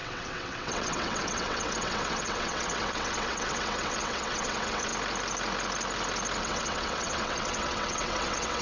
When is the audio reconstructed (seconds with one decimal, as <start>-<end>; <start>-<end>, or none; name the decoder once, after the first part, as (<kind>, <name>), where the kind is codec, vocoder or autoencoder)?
0.0-4.9 (vocoder, WaveNeXt); 6.4-8.6